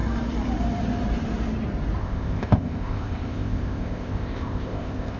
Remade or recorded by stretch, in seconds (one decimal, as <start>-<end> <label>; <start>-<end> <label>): 0.0-2.0 recorded; 2.0-5.2 remade